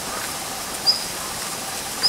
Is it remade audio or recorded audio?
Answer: recorded